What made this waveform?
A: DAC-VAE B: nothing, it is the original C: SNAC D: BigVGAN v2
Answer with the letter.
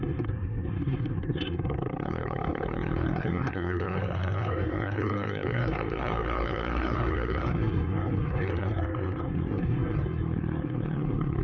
C